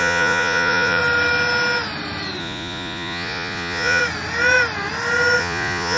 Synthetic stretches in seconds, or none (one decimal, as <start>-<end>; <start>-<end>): 0.0-1.0; 2.4-4.0; 5.4-6.0